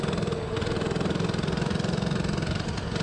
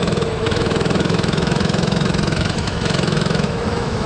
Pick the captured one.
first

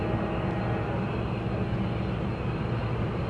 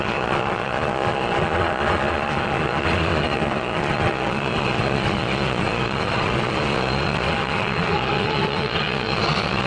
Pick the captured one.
first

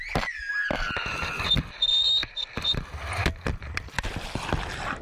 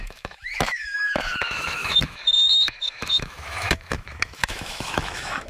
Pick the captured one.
first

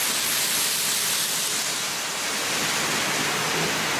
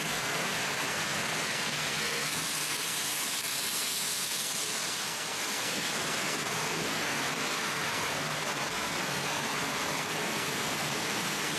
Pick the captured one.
first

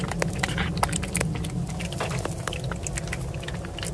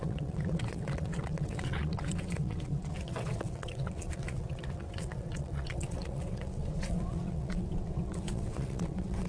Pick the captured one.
first